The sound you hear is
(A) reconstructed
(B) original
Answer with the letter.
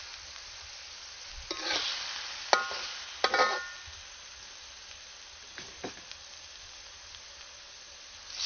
B